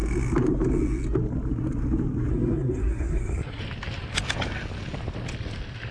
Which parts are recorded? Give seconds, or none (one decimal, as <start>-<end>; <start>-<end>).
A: 0.0-2.3; 3.6-5.9

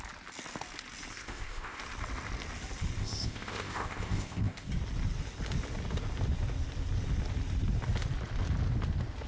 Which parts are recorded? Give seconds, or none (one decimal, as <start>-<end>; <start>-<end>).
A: 0.0-1.1; 1.8-3.0; 4.7-9.3

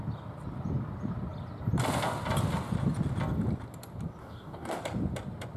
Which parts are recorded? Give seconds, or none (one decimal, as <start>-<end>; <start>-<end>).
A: 0.0-4.2; 4.8-5.6

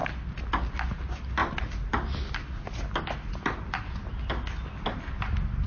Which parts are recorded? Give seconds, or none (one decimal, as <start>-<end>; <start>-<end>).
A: 0.0-1.4; 3.0-5.7